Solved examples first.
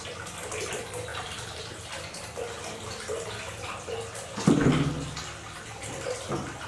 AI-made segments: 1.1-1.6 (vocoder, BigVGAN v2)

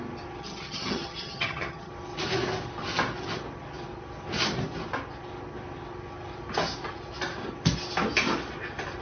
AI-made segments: 0.4-1.9 (vocoder, HiFi-GAN)

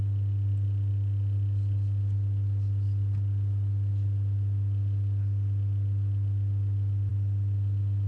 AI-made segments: none

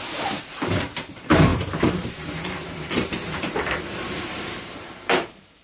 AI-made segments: 0.0-5.6 (vocoder, BigVGAN v2)

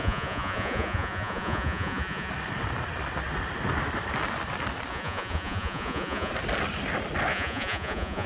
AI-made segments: 0.0-2.3 (vocoder, Vocos); 4.9-6.3; 7.3-8.3

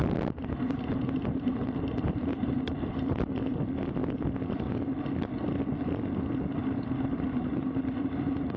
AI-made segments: 0.4-3.1 (vocoder, BigVGAN v2); 6.6-8.6

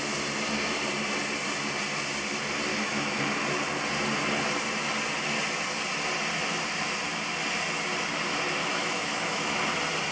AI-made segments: 2.7-3.2 (autoencoder, DAC-VAE); 8.6-9.6

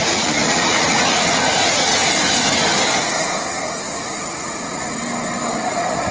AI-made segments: 0.0-2.0 (vocoder, Vocos); 3.8-5.0; 5.5-6.1